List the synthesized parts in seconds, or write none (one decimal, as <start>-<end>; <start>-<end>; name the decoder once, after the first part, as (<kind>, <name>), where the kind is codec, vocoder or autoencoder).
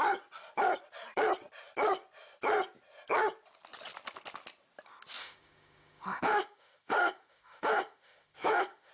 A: 5.2-8.9 (autoencoder, DAC-VAE)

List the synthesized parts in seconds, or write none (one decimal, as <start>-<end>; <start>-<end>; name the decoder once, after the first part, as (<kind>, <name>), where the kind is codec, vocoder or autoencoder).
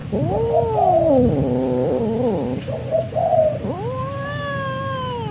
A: none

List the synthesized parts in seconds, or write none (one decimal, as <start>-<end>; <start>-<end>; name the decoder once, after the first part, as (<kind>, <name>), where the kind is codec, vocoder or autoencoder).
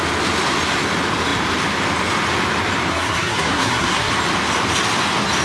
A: 2.9-4.1 (codec, SNAC)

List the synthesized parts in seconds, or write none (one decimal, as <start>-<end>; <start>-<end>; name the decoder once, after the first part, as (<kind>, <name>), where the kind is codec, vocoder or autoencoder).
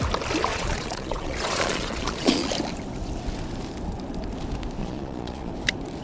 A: 0.5-2.5 (vocoder, Vocos); 4.8-5.5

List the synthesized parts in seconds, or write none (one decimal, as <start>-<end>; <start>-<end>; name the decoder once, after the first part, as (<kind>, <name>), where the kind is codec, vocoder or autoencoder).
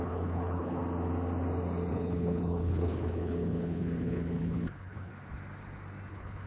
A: 0.0-0.8 (codec, HILCodec); 1.9-5.1; 6.1-6.5